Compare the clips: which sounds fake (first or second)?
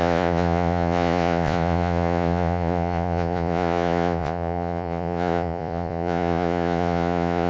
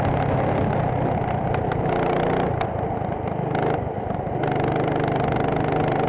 first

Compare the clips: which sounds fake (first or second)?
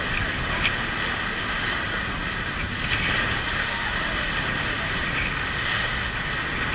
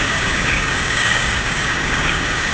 second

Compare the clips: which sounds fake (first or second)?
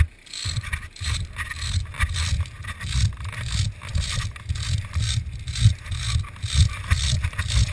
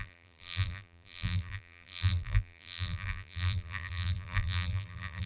second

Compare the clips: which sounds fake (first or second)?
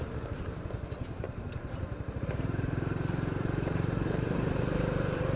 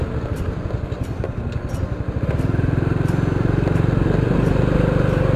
first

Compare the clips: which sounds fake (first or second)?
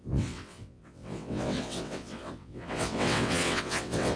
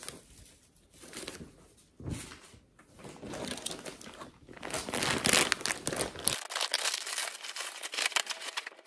first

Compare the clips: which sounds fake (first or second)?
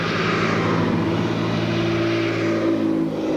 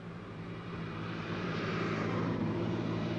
second